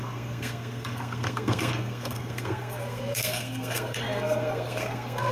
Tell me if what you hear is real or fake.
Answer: fake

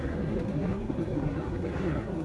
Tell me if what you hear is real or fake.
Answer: fake